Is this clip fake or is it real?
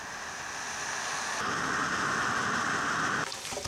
real